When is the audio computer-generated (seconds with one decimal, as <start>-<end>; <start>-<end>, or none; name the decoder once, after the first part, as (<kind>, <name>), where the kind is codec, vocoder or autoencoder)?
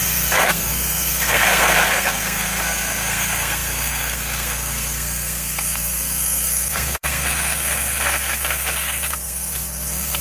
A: 0.0-10.2 (codec, SNAC)